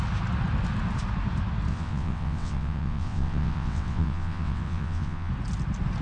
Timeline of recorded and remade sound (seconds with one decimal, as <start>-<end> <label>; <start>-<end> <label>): 0.0-1.7 recorded; 1.7-5.3 remade; 5.3-6.0 recorded